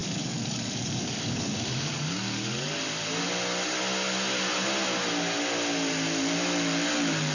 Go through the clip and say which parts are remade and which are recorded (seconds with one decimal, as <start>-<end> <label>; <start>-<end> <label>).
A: 0.0-2.8 remade; 2.8-7.3 recorded

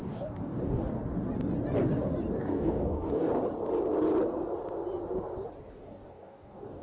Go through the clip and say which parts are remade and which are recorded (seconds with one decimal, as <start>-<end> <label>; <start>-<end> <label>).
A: 0.0-0.8 remade; 0.8-2.4 recorded; 2.4-3.3 remade; 3.3-5.7 recorded; 5.7-6.8 remade

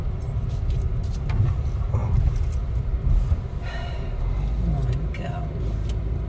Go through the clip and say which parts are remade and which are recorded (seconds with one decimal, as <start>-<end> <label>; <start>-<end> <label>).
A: 0.0-6.3 recorded